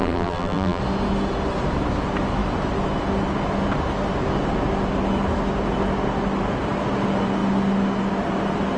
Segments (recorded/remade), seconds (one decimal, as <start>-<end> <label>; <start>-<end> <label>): 0.0-0.8 remade; 0.8-8.8 recorded